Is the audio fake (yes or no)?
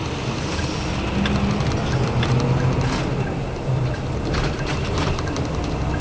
no